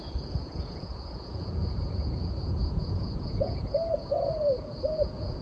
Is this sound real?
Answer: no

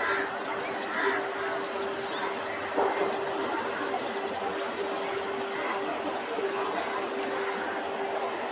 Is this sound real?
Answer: yes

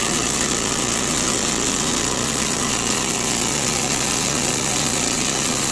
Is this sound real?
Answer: no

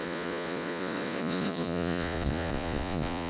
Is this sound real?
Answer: no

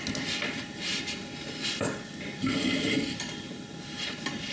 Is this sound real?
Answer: yes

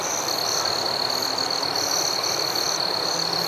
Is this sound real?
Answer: yes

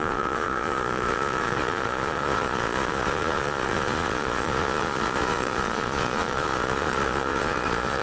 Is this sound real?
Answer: no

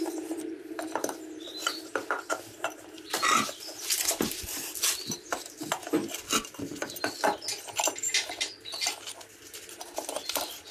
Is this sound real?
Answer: yes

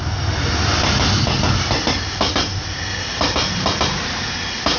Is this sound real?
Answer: yes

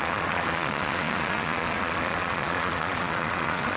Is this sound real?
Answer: no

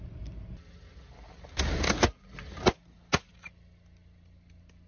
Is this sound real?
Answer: yes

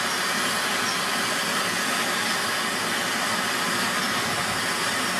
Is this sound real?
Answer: yes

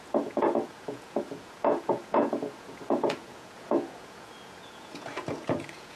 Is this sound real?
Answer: no